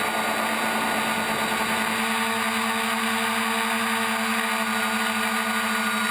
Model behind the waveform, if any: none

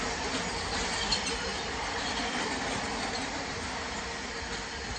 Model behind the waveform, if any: none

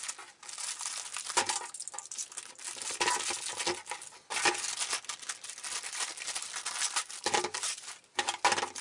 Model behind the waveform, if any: none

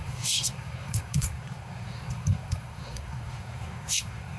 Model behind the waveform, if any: codec, SNAC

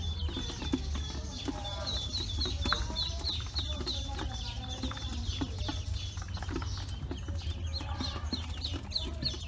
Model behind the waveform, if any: none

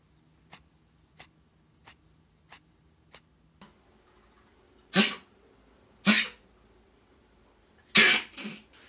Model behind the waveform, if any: none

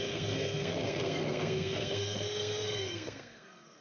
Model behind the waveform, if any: codec, SNAC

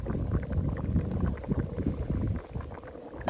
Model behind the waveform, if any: none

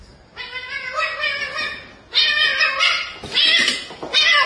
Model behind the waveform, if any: none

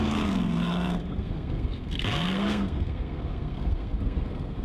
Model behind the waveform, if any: codec, SNAC